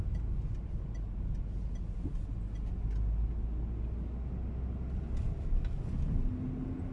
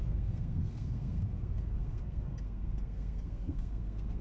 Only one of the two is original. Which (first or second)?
first